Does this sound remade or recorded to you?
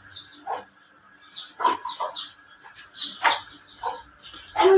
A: recorded